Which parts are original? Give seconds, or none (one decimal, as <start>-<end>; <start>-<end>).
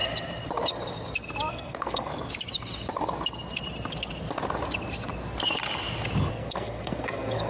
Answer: 0.0-1.5; 2.1-6.3